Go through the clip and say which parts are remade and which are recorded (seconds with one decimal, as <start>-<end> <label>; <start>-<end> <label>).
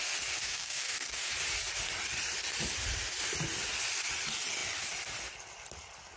0.0-0.4 recorded; 0.4-1.3 remade; 1.3-6.2 recorded